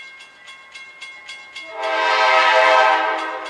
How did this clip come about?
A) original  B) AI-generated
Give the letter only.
A